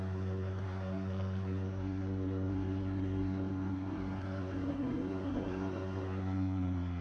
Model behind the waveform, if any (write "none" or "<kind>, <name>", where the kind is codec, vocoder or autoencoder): codec, SNAC